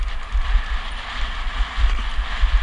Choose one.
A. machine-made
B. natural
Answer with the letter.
B